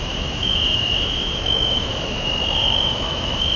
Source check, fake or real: fake